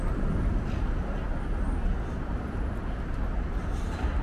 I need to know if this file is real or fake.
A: real